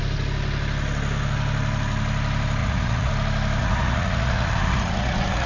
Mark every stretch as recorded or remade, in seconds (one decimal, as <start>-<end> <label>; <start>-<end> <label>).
0.0-2.6 recorded; 2.6-3.1 remade; 3.1-3.6 recorded; 3.6-5.5 remade